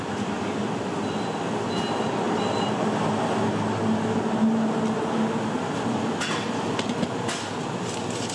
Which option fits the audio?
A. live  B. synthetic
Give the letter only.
A